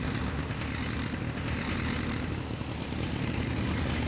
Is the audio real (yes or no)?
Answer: yes